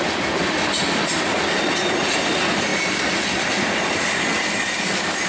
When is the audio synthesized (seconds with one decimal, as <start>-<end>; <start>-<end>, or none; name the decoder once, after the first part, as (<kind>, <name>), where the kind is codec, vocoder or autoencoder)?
none